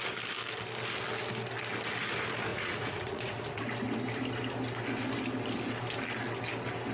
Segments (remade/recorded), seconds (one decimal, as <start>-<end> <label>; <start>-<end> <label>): 0.0-2.5 recorded; 2.5-3.6 remade; 3.6-6.9 recorded